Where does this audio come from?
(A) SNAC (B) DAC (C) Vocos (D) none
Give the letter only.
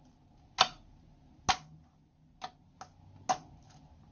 D